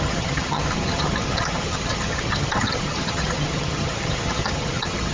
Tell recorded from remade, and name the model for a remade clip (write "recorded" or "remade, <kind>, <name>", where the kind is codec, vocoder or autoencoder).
remade, vocoder, HiFi-GAN